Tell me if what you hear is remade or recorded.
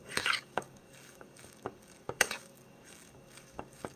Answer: remade